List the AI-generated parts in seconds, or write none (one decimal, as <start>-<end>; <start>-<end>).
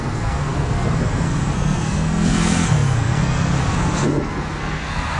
0.0-5.2